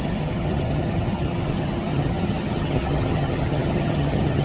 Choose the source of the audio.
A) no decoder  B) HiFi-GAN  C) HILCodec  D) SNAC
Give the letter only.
B